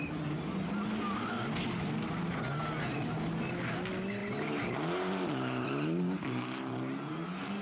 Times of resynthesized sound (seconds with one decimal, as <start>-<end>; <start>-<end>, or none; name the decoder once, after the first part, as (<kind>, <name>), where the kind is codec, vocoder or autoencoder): 4.2-7.1 (vocoder, BigVGAN v2)